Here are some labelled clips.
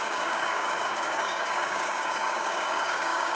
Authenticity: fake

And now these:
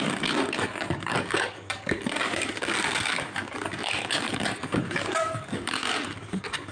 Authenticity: fake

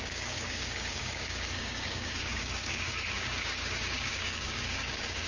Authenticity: fake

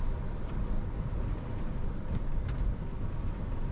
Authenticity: real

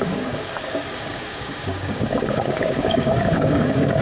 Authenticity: fake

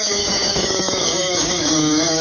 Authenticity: fake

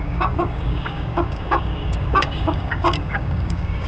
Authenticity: fake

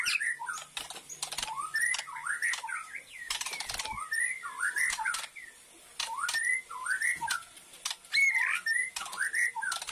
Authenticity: real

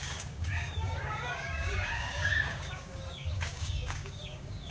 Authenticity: fake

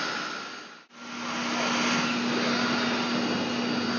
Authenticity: real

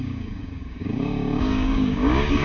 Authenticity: fake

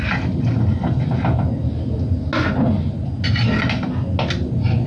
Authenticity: real